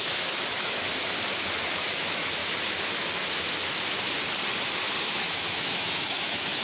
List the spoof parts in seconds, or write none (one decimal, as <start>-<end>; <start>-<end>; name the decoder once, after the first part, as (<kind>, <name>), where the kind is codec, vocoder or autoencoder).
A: 0.0-0.9 (autoencoder, DAC-VAE); 1.6-2.4; 5.0-6.6